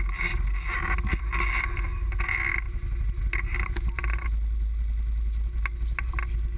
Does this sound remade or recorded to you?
recorded